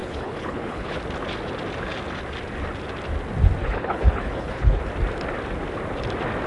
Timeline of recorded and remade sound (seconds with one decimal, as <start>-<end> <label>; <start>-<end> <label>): 0.0-1.0 remade; 1.0-3.6 recorded; 3.6-4.8 remade; 4.8-6.5 recorded

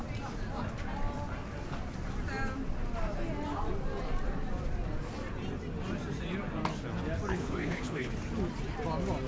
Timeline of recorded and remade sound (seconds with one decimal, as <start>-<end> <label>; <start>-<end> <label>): 0.0-7.3 recorded; 7.3-8.1 remade; 8.1-9.3 recorded

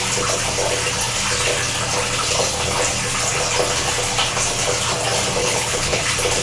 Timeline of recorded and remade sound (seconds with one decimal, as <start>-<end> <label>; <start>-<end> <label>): 0.0-5.4 recorded; 5.4-6.0 remade; 6.0-6.4 recorded

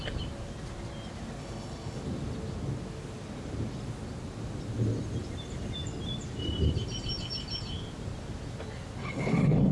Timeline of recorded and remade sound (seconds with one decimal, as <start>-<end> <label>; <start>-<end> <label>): 0.0-1.4 recorded; 1.4-2.0 remade; 2.0-9.0 recorded; 9.0-9.7 remade

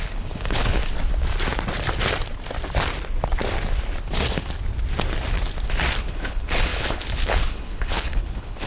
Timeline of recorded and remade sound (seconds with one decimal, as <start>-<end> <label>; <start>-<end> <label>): 0.0-0.8 remade; 0.8-6.0 recorded; 6.0-8.7 remade